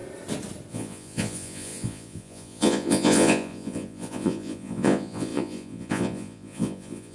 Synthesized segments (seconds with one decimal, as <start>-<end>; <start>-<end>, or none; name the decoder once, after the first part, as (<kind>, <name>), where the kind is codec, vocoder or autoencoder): 0.7-7.1 (vocoder, Vocos)